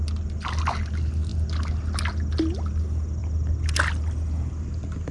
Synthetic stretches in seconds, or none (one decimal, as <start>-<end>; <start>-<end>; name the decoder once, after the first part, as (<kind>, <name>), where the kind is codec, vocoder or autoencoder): none